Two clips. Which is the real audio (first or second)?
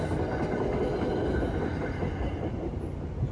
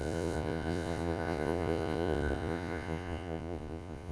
first